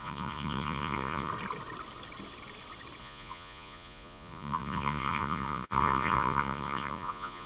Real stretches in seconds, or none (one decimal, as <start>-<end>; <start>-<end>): 1.3-3.0

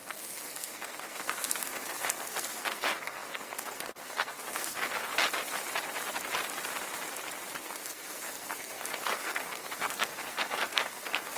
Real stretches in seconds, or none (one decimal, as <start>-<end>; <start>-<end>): 5.1-7.6

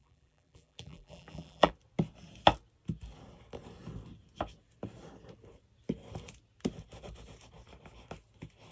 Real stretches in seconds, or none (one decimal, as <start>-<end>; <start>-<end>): 1.7-8.7

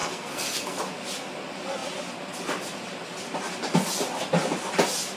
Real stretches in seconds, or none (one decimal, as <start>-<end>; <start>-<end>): 0.8-5.2

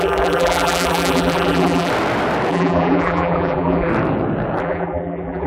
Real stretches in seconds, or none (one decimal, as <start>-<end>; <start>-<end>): 1.9-2.5; 3.9-4.6

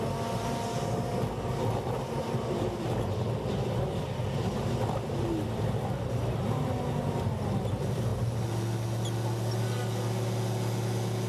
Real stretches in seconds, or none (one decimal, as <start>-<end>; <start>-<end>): 0.0-11.3

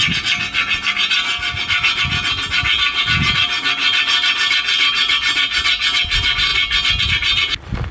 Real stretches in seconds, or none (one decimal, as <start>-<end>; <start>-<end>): 0.0-7.9

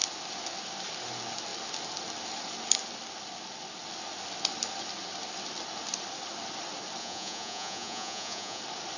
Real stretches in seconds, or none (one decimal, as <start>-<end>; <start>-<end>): 0.0-7.0; 8.6-9.0